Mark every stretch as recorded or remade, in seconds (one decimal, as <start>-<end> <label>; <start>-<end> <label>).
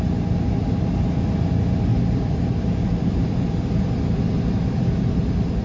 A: 0.0-1.9 recorded; 1.9-4.0 remade; 4.0-5.6 recorded